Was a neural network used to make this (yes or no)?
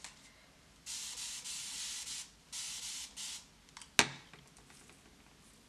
no